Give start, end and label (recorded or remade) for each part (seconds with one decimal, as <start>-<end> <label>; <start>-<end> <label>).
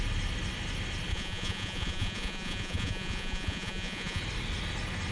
0.0-1.1 recorded; 1.1-4.2 remade; 4.2-5.1 recorded